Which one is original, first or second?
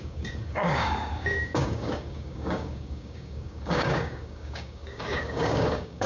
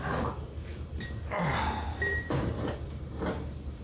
second